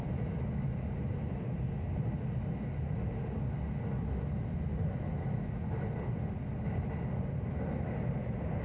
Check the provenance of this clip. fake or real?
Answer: real